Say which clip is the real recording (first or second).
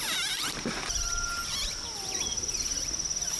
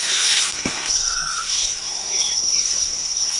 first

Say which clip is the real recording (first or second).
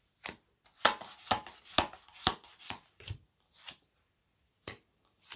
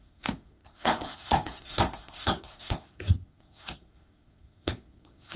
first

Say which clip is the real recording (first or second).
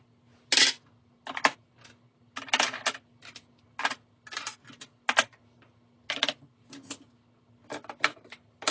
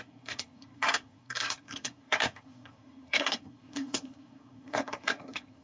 first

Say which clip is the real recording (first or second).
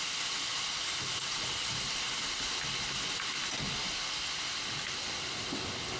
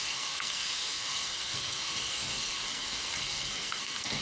first